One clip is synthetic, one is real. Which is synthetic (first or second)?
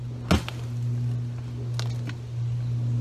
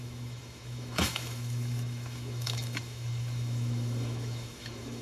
second